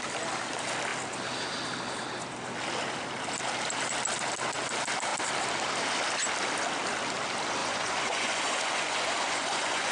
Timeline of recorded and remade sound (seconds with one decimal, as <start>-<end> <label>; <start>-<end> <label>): 0.0-7.6 recorded; 7.6-9.9 remade